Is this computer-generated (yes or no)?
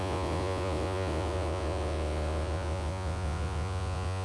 yes